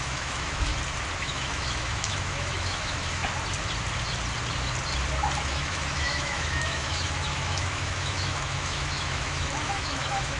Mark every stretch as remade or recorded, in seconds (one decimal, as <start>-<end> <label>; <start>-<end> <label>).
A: 0.0-0.7 remade; 0.7-1.2 recorded; 1.2-3.2 remade; 3.2-5.4 recorded; 5.4-10.4 remade